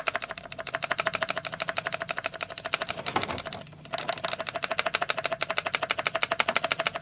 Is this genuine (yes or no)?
yes